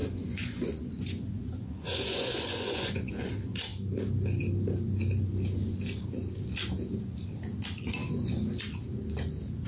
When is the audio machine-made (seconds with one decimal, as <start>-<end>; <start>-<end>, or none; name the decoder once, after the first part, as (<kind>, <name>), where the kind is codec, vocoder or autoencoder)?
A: 0.0-3.1 (vocoder, Vocos)